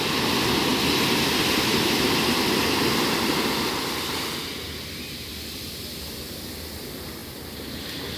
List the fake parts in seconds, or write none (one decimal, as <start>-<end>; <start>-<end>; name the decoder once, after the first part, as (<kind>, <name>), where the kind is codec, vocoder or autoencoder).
none